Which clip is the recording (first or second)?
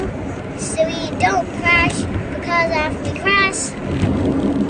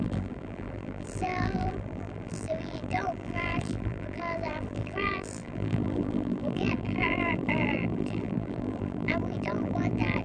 first